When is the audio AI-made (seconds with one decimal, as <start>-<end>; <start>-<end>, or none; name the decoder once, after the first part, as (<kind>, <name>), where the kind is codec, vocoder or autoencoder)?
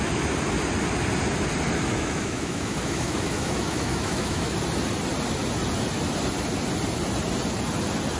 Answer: 1.9-4.5 (autoencoder, DAC-VAE)